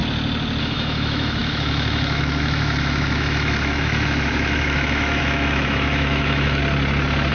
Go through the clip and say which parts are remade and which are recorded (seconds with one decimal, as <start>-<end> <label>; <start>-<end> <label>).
0.0-0.6 recorded; 0.6-6.6 remade; 6.6-7.3 recorded